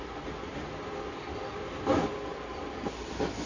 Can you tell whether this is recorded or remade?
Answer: recorded